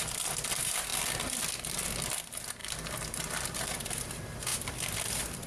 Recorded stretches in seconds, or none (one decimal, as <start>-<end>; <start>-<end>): 0.0-2.6; 4.0-4.5